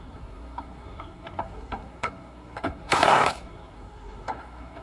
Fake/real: fake